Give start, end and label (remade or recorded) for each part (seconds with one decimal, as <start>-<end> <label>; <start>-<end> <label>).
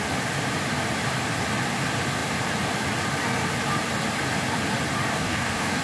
0.0-5.1 recorded; 5.1-5.8 remade